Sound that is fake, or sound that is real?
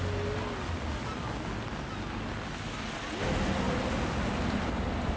real